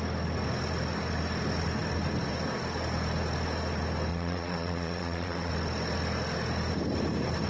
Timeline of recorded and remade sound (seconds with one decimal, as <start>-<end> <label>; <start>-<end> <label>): 0.0-4.1 recorded; 4.1-5.5 remade; 5.5-7.5 recorded